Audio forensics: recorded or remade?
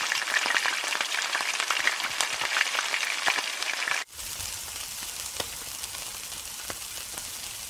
recorded